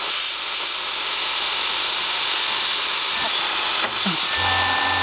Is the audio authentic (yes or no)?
yes